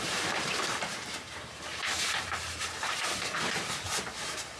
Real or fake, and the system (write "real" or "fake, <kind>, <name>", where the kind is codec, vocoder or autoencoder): fake, vocoder, BigVGAN v2